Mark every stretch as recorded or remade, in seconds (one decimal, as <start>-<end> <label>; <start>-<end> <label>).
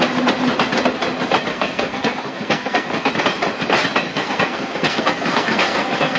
0.0-1.5 recorded; 1.5-3.1 remade; 3.1-4.1 recorded; 4.1-6.2 remade